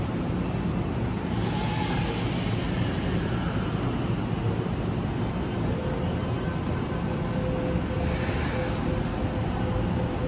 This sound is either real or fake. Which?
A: real